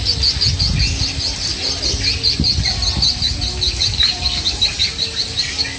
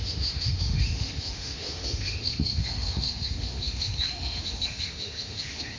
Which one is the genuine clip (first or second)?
first